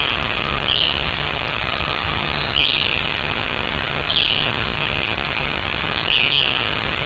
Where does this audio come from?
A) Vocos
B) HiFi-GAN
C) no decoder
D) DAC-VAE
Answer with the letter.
B